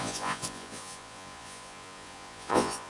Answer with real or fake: fake